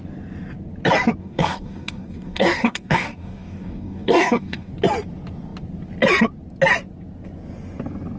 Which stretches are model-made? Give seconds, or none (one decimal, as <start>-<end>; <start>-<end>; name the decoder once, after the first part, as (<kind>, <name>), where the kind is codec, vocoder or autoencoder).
1.2-4.7 (codec, DAC)